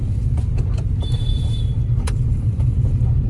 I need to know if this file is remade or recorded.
remade